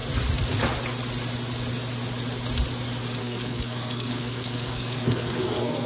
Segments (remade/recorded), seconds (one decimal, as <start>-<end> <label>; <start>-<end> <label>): 0.0-3.2 recorded; 3.2-5.9 remade